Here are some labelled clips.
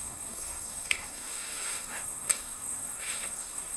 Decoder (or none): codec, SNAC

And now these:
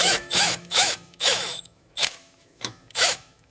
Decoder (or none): autoencoder, DAC-VAE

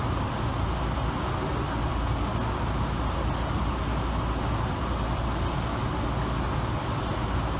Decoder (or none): none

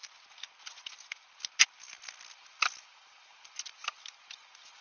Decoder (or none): none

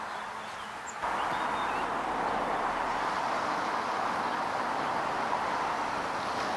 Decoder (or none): none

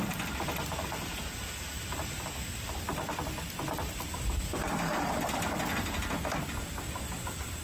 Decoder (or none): none